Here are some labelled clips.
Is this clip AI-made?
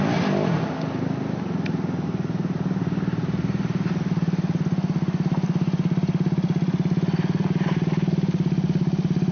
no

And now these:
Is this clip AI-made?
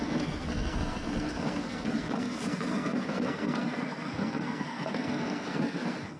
yes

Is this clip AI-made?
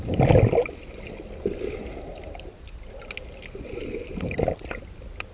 no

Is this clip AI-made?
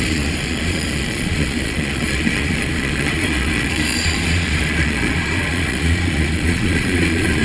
yes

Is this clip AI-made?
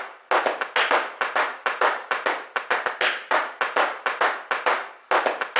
no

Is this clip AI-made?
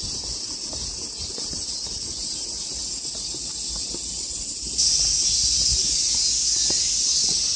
no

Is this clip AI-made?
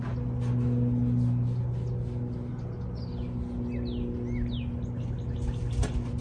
no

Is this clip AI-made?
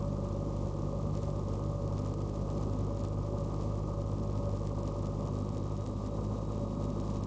no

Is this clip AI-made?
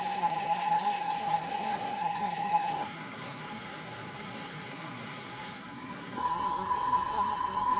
yes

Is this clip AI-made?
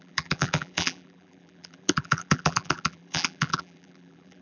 yes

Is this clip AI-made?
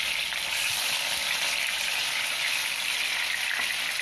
no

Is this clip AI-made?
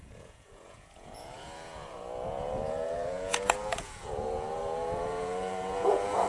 yes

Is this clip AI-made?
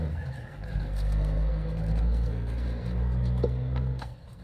yes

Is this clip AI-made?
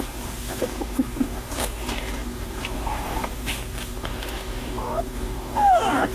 yes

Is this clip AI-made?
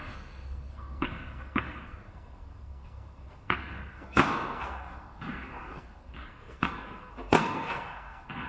yes